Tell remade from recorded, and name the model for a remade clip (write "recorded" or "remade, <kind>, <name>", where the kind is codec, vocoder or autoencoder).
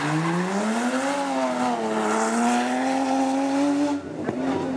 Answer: recorded